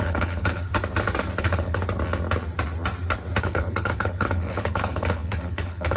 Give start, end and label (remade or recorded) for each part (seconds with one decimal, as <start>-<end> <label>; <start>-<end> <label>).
0.0-0.7 remade; 0.7-1.4 recorded; 1.4-1.8 remade; 1.8-3.4 recorded; 3.4-6.0 remade